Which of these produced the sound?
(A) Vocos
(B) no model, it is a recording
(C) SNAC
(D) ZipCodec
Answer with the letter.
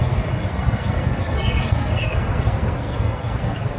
C